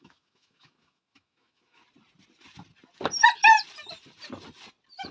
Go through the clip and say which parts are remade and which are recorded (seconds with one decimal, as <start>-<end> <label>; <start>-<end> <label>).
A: 0.0-1.8 remade; 1.8-5.1 recorded